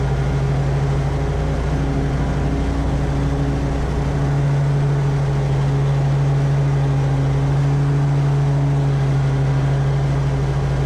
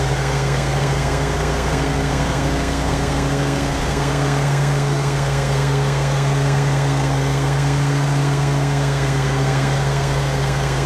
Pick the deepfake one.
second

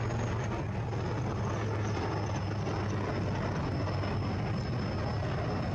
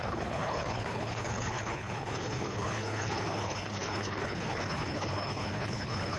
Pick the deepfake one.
second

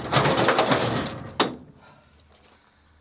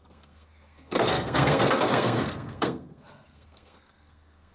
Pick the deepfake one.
second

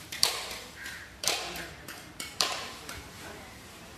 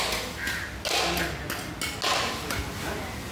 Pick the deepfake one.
first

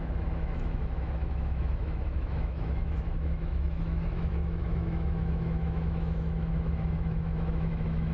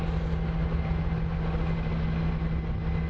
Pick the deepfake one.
first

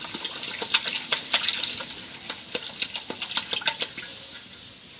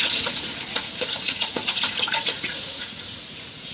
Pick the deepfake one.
second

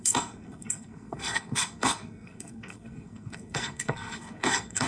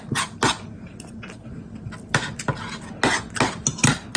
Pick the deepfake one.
first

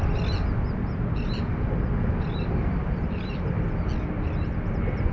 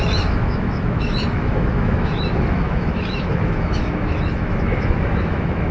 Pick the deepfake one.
second